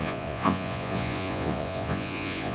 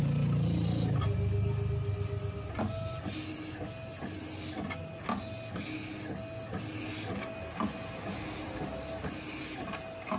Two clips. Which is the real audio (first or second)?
second